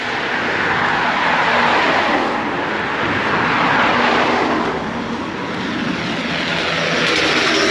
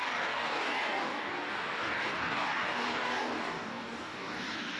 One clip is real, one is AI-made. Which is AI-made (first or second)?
second